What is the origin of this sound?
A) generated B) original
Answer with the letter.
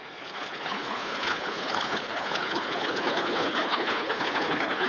A